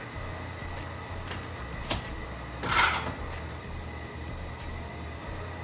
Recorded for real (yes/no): yes